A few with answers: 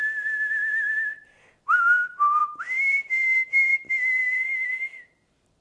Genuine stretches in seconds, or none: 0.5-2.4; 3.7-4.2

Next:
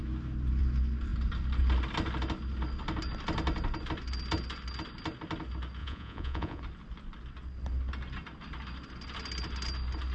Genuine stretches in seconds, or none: 0.0-5.8; 6.6-10.1

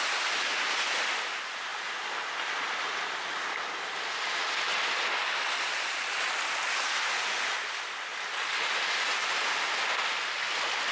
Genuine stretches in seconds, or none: 0.0-10.9